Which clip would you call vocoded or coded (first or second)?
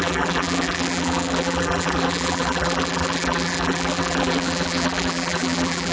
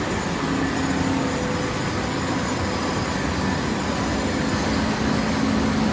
first